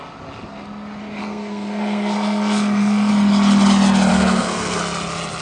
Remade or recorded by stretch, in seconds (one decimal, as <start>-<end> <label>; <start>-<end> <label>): 0.0-1.2 recorded; 1.2-3.1 remade; 3.1-4.1 recorded; 4.1-4.8 remade; 4.8-5.4 recorded